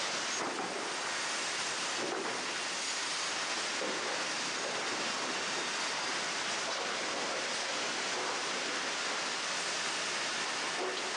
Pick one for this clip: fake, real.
real